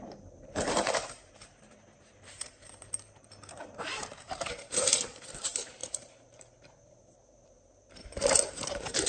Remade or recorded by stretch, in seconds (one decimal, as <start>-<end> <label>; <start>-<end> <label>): 0.0-9.1 remade